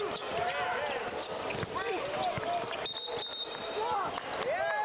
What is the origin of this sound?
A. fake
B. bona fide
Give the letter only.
B